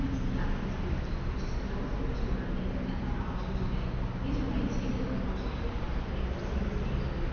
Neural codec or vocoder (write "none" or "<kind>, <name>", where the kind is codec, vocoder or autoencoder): none